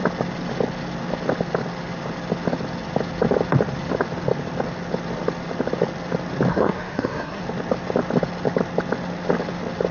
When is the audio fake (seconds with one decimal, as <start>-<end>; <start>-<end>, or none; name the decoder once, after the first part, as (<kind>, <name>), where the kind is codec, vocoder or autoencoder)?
6.5-7.4 (codec, SNAC)